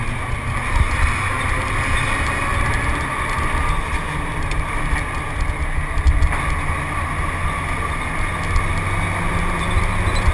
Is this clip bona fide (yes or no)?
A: yes